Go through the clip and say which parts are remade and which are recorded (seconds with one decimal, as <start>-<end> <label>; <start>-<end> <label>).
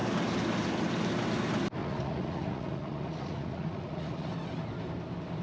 0.0-1.8 recorded; 1.8-4.3 remade; 4.3-5.4 recorded